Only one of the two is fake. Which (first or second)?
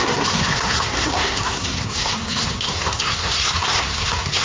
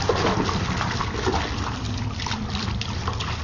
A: first